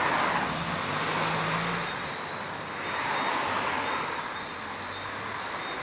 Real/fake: real